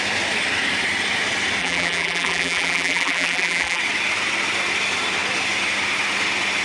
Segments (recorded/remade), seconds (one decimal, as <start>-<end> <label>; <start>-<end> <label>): 0.0-1.6 recorded; 1.6-3.8 remade; 3.8-6.6 recorded